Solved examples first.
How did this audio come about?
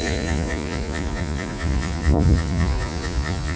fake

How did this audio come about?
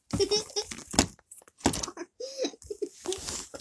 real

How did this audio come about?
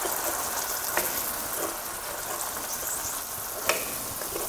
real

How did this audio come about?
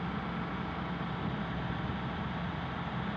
real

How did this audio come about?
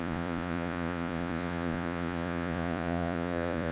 fake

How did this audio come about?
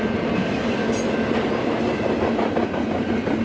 real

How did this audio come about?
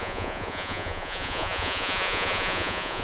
fake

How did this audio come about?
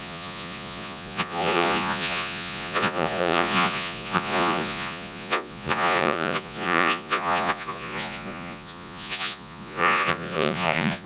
fake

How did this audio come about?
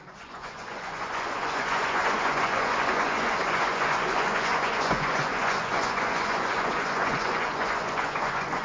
fake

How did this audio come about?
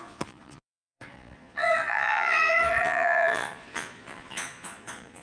fake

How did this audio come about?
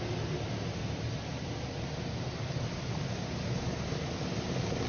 real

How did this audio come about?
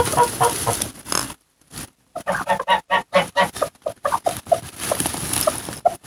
real